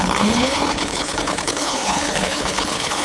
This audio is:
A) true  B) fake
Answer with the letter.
B